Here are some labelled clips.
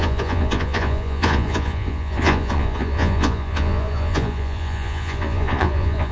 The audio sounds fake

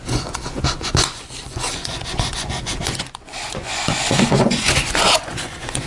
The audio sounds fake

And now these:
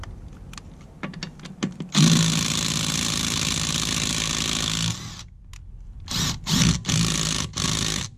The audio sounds real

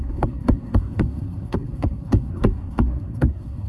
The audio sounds fake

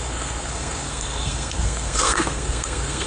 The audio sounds fake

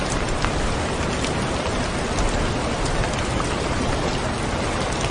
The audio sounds real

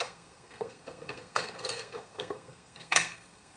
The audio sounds fake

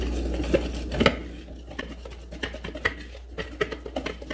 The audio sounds real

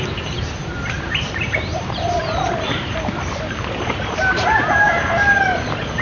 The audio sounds fake